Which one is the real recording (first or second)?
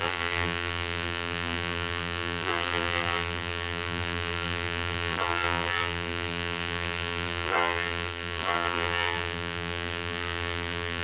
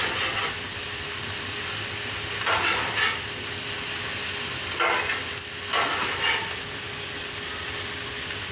second